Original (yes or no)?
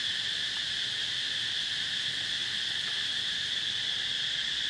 yes